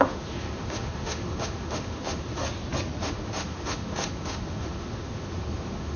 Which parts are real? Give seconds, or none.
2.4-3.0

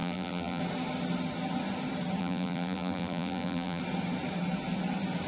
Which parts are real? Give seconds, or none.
0.6-2.2; 3.8-5.3